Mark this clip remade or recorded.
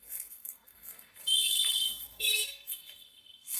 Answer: remade